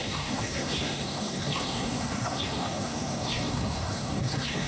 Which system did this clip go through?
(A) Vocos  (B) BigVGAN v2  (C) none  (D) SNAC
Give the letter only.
D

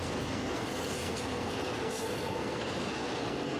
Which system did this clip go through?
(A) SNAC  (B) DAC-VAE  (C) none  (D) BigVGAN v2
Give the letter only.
A